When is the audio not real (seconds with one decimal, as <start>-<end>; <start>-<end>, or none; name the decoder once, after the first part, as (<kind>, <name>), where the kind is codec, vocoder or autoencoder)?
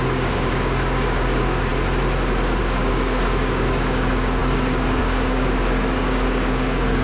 0.0-1.7 (codec, DAC); 2.6-7.0